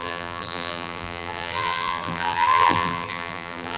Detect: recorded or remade remade